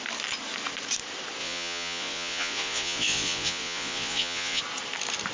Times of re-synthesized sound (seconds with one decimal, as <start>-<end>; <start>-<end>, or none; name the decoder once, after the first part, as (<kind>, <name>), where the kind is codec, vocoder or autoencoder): 1.4-4.6 (vocoder, Vocos)